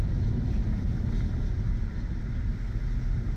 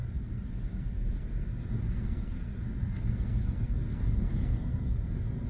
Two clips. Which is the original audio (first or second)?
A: first